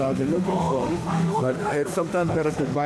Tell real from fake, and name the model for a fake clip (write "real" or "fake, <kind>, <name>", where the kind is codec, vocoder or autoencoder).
fake, autoencoder, DAC-VAE